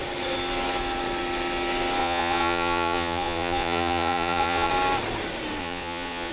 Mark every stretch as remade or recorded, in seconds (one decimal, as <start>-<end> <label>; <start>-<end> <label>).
0.0-2.0 recorded; 2.0-4.7 remade; 4.7-5.6 recorded; 5.6-6.3 remade

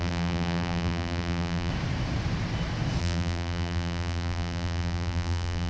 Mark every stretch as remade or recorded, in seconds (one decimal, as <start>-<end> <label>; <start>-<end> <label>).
0.0-1.7 remade; 1.7-3.0 recorded; 3.0-5.7 remade

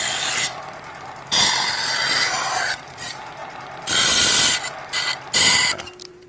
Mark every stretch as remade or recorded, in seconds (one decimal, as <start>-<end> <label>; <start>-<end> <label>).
0.0-3.4 remade; 3.4-5.5 recorded; 5.5-6.3 remade

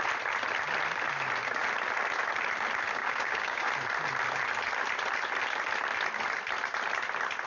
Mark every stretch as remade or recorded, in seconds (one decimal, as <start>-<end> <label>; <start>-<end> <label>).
0.0-3.0 recorded; 3.0-3.7 remade; 3.7-7.5 recorded